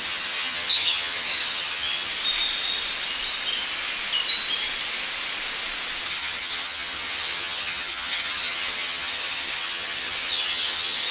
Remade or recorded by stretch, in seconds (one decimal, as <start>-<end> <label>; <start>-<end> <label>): 0.0-2.1 remade; 2.1-6.0 recorded; 6.0-11.1 remade